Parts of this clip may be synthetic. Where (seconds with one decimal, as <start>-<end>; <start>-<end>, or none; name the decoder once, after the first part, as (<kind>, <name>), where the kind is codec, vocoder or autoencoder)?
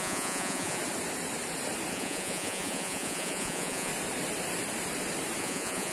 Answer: 0.0-0.8 (vocoder, Vocos); 1.9-3.9; 5.4-5.9